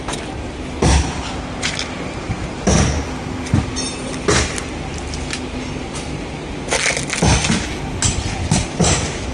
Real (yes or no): yes